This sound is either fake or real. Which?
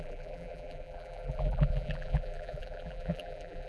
fake